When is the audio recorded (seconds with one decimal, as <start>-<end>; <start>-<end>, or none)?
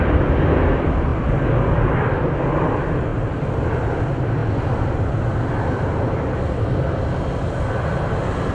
0.0-8.5